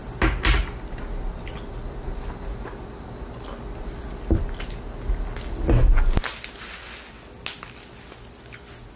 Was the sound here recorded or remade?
recorded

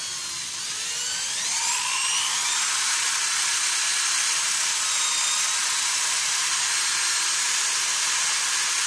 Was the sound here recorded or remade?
recorded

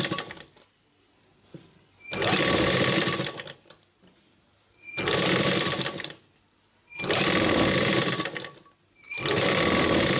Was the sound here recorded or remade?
recorded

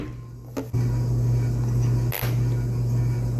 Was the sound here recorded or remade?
recorded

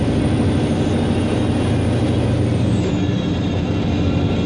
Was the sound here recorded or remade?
recorded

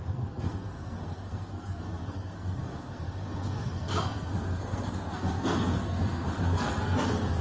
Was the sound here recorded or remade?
remade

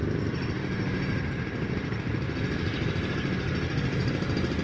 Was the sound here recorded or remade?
recorded